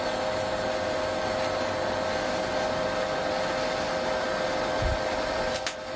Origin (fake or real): fake